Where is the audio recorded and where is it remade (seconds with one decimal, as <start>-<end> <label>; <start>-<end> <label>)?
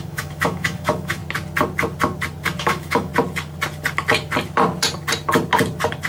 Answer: 0.0-1.2 remade; 1.2-2.6 recorded; 2.6-3.1 remade; 3.1-6.1 recorded